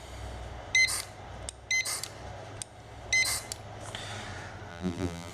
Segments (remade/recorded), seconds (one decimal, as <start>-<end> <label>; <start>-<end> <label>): 0.0-4.7 recorded; 4.7-5.3 remade